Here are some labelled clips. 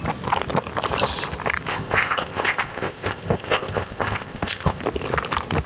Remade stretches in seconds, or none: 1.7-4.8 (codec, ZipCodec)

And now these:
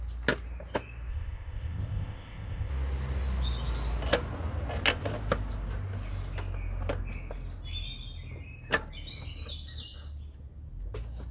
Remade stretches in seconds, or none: 1.1-2.7 (codec, ZipCodec)

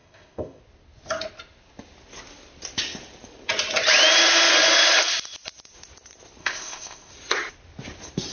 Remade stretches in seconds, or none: 0.0-0.6 (codec, ZipCodec); 6.4-7.1

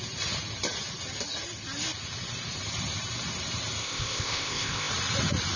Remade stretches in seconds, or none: 3.8-4.9 (codec, ZipCodec)

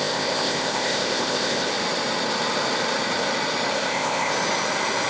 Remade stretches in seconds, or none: 0.0-1.7 (codec, ZipCodec); 3.7-4.3

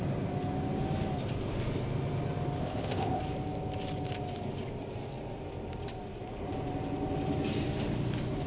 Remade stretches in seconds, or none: 2.6-3.2 (codec, ZipCodec)